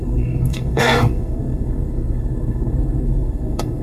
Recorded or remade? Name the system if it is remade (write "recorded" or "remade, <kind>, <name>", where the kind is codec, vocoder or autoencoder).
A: remade, codec, SNAC